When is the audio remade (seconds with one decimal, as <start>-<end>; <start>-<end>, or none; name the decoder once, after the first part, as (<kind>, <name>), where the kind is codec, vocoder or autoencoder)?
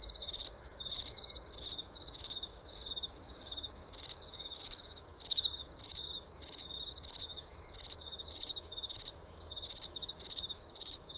0.0-11.2 (autoencoder, DAC-VAE)